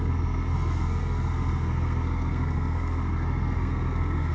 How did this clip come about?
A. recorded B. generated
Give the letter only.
B